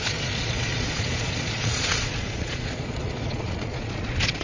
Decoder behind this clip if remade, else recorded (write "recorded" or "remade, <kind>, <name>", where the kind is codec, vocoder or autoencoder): remade, vocoder, Vocos